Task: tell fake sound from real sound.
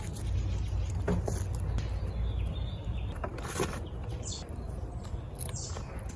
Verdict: real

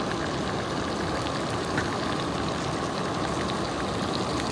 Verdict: real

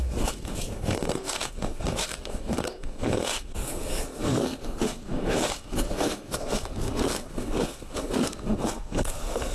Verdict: fake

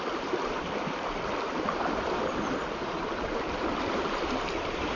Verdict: real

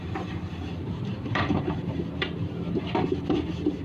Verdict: fake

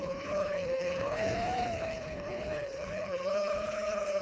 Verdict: fake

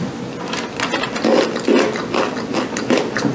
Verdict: real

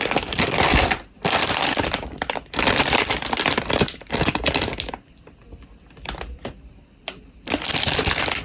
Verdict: fake